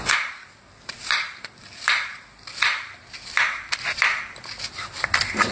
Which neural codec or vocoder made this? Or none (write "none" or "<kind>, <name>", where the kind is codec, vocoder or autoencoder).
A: vocoder, BigVGAN v2